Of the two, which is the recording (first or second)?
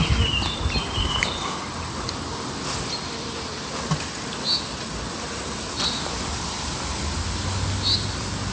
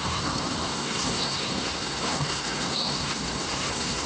first